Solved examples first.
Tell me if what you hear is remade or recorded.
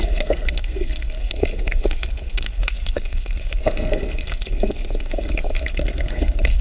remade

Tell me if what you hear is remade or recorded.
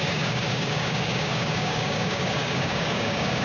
remade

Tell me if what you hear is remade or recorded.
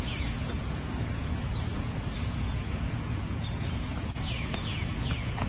remade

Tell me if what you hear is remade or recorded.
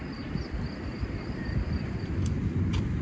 recorded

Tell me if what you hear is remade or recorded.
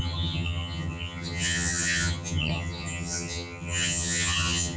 remade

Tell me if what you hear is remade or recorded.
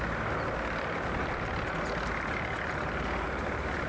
recorded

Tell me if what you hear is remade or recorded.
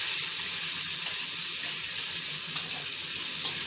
recorded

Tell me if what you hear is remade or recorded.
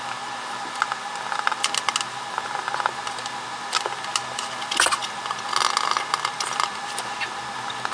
recorded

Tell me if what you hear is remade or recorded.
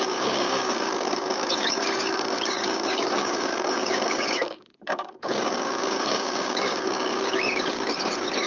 remade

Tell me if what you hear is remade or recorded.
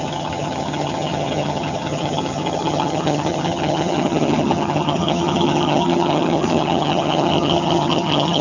remade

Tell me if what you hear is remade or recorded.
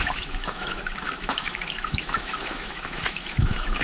remade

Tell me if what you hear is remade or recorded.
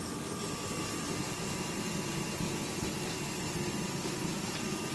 recorded